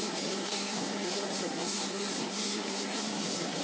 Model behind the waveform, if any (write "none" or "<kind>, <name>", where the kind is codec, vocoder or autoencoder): codec, SNAC